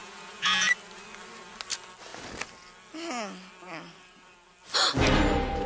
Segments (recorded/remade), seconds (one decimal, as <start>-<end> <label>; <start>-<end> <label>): 0.0-0.7 remade; 0.7-5.7 recorded